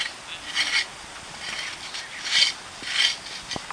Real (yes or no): yes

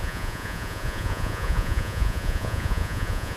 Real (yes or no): no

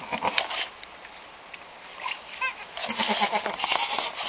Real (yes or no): yes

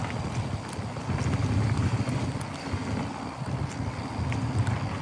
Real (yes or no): yes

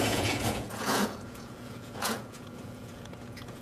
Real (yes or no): no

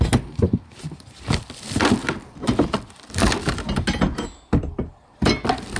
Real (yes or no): yes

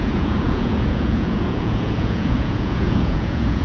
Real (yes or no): no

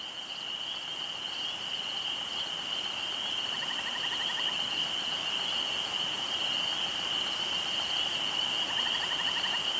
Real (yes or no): yes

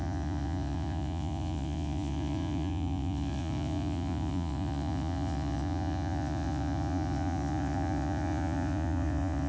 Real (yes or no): no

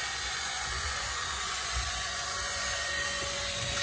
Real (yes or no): no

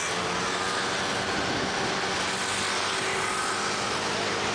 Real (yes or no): yes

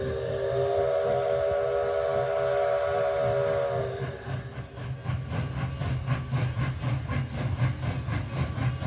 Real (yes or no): yes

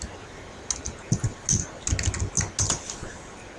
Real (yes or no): yes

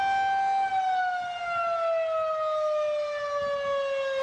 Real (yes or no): yes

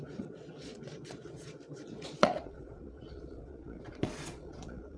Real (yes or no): no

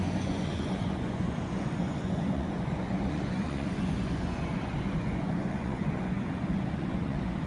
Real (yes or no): no